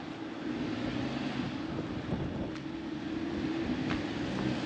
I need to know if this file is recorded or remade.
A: recorded